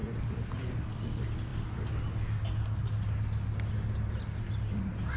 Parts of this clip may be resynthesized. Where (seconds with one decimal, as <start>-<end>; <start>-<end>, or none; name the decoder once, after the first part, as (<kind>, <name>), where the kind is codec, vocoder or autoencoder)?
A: none